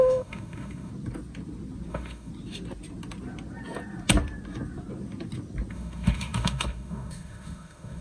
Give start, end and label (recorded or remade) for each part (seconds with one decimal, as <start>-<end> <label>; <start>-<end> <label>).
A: 0.0-0.9 remade; 0.9-1.9 recorded; 1.9-2.3 remade; 2.3-5.7 recorded; 5.7-8.0 remade